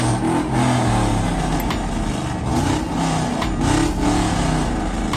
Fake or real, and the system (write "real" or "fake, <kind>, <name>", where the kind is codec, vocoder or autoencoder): real